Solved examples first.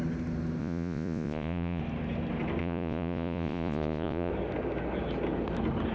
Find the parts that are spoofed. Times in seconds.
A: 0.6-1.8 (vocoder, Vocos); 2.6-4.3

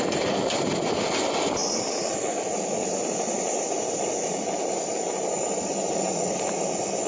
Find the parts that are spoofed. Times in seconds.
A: none

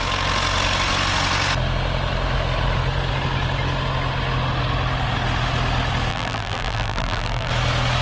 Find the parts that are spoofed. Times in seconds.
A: 6.1-7.5 (vocoder, BigVGAN v2)